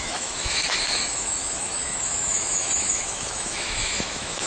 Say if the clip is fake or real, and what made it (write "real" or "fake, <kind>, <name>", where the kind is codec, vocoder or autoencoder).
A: fake, autoencoder, DAC-VAE